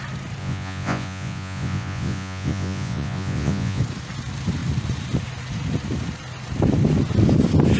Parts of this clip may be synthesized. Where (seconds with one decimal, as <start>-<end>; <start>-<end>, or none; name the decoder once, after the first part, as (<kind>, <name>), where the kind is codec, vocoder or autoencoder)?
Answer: 0.4-3.8 (vocoder, Vocos)